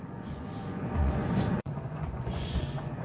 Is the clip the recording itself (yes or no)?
no